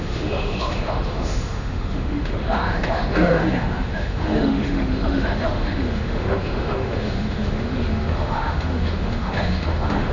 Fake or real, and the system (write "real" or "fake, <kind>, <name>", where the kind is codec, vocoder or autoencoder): fake, autoencoder, DAC-VAE